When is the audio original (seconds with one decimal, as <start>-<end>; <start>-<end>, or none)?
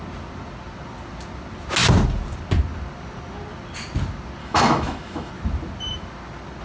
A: 0.0-4.4; 5.3-6.6